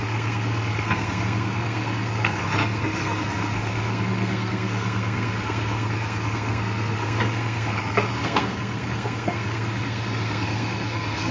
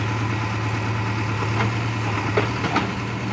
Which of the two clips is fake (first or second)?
first